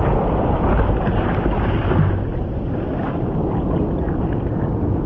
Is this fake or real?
real